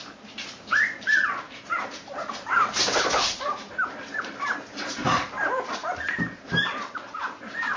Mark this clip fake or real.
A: fake